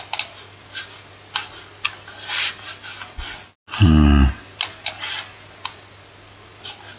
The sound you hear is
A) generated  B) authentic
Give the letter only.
B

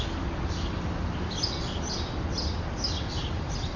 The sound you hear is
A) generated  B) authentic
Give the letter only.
B